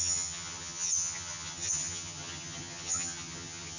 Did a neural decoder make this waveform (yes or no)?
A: yes